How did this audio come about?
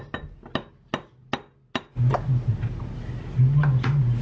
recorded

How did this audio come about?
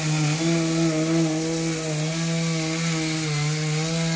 recorded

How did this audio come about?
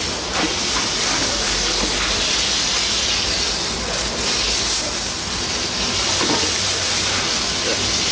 recorded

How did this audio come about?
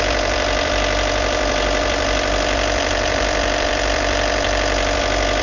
remade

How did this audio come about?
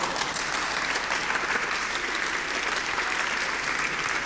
recorded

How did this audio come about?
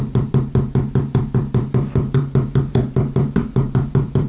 remade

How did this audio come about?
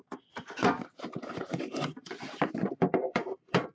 remade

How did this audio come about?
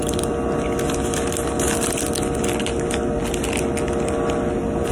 recorded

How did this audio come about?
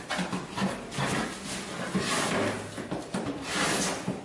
recorded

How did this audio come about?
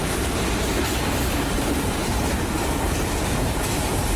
remade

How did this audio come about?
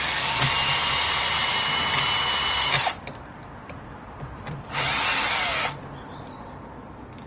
remade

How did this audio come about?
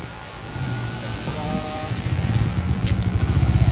remade